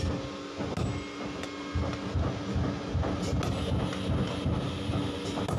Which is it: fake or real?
real